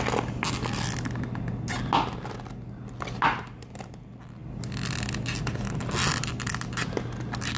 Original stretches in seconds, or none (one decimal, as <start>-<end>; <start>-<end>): 0.0-7.6